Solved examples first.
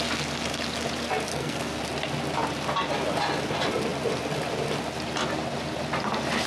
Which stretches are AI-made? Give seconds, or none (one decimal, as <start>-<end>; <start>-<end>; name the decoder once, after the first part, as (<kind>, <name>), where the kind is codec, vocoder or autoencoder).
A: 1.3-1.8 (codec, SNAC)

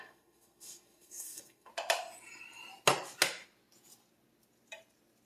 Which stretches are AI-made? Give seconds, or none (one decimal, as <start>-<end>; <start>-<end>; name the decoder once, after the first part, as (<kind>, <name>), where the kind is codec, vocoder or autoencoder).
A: 0.0-1.7 (codec, SNAC)

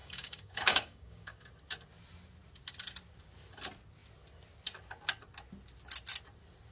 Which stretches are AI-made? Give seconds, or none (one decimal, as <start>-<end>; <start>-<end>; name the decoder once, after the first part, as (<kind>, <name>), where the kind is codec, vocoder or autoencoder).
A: 0.0-1.5 (codec, DAC)

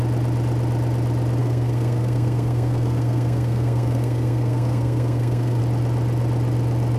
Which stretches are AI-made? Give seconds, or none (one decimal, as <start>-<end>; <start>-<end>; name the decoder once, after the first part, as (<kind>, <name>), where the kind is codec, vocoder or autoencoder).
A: 1.4-5.6 (codec, SNAC)